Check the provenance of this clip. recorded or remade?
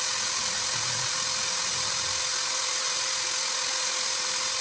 recorded